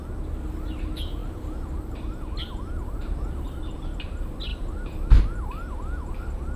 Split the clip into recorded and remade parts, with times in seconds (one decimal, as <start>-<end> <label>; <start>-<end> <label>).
0.0-6.6 recorded